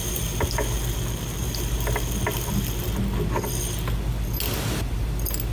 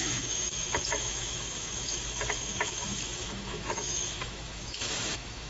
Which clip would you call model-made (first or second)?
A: second